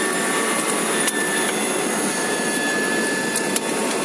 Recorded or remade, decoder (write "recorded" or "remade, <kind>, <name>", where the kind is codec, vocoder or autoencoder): recorded